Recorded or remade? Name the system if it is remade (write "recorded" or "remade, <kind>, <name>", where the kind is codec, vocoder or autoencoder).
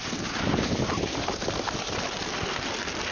recorded